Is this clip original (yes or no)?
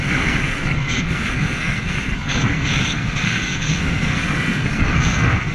no